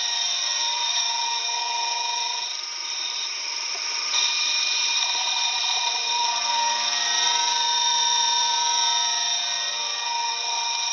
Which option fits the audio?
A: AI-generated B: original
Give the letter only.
A